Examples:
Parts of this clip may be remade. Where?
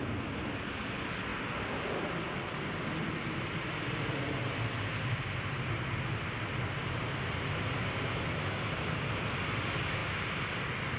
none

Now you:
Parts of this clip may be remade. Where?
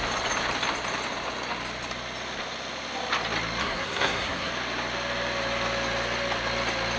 3.6-4.5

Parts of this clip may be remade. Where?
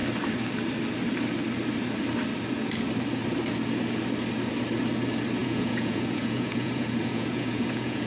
5.4-8.1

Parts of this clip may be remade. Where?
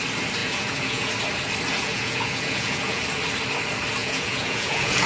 0.4-1.1; 1.7-3.0; 4.0-5.1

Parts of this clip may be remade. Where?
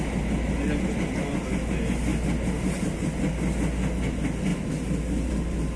none